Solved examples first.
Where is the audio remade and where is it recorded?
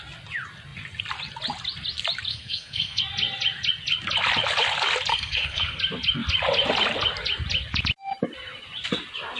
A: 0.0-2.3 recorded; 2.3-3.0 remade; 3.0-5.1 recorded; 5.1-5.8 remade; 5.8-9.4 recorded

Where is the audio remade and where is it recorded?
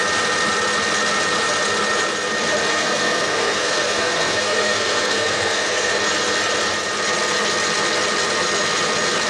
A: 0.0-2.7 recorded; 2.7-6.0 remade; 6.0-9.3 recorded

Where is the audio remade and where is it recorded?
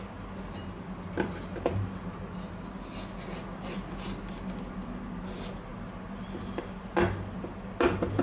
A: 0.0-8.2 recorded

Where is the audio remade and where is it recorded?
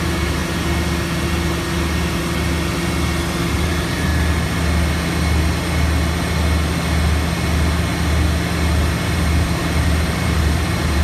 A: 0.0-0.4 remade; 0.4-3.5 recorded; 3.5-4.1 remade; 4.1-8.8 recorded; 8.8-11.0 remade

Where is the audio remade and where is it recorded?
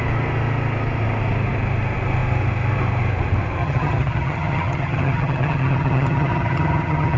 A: 0.0-3.6 recorded; 3.6-7.2 remade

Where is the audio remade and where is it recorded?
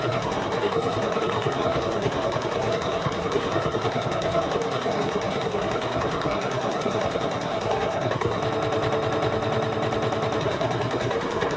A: 0.0-8.4 remade; 8.4-10.4 recorded; 10.4-11.6 remade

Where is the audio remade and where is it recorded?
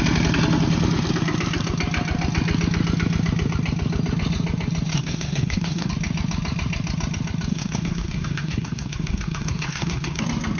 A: 0.0-4.9 recorded; 4.9-5.9 remade; 5.9-7.5 recorded; 7.5-10.2 remade; 10.2-10.6 recorded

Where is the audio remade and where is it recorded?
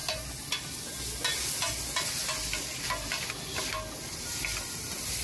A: 0.0-5.2 recorded